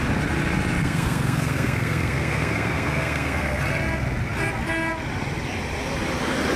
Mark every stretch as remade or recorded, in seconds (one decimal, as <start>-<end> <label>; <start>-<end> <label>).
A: 0.0-0.8 recorded; 0.8-3.6 remade; 3.6-6.6 recorded